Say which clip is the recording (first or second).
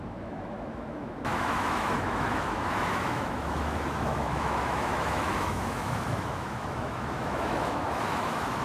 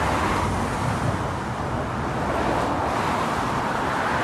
second